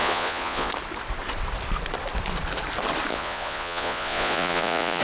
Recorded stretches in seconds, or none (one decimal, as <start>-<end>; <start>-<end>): 0.7-3.1